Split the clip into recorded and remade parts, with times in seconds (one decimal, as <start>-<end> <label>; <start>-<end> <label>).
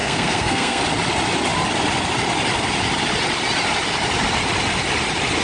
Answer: 0.0-0.8 remade; 0.8-5.4 recorded